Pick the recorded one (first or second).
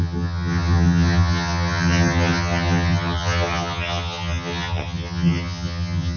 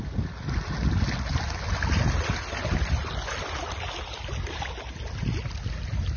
second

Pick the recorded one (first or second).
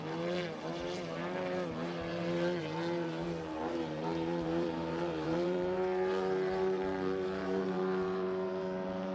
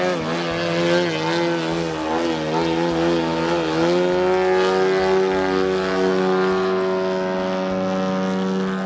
second